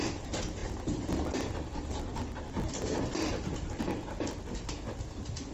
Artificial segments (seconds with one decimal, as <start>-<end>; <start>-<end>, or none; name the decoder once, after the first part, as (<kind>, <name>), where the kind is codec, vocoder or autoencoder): none